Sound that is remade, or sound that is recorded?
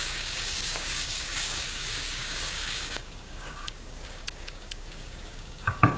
remade